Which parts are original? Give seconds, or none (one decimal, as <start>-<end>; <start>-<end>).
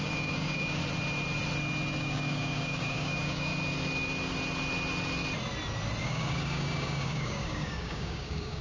0.8-2.0; 3.5-6.0